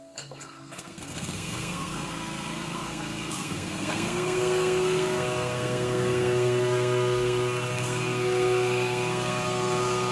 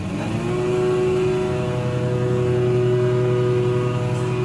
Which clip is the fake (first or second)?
first